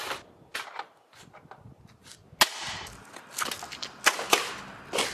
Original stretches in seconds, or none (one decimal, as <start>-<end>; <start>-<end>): 0.0-5.1